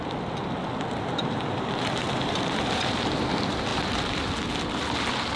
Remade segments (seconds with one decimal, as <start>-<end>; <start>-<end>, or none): none